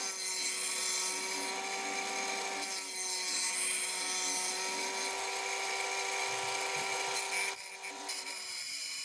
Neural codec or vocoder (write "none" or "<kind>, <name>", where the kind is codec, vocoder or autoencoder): none